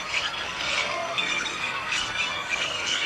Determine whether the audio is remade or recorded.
remade